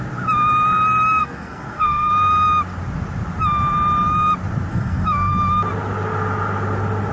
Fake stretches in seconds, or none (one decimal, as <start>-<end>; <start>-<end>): 1.2-2.1; 4.7-5.3